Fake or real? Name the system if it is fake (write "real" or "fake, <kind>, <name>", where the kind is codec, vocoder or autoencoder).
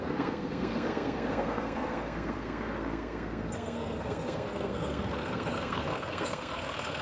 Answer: fake, codec, SNAC